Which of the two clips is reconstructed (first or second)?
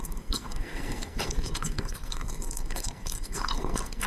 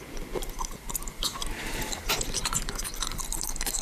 first